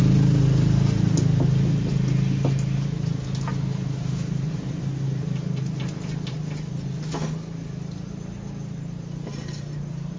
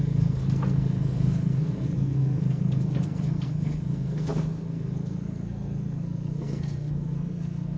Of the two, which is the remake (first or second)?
second